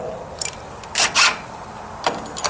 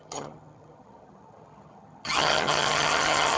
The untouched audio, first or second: first